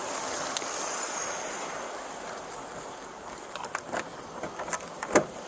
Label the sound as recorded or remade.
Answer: recorded